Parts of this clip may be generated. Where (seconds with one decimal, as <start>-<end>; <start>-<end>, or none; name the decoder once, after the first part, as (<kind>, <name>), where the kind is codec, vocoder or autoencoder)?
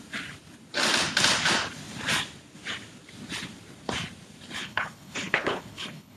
4.6-6.2 (codec, HILCodec)